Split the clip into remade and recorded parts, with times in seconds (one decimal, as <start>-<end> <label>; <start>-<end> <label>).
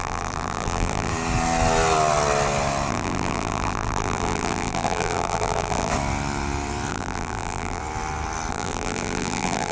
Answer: 0.0-1.1 remade; 1.1-2.9 recorded; 2.9-5.9 remade; 5.9-6.9 recorded; 6.9-7.8 remade; 7.8-8.5 recorded; 8.5-9.7 remade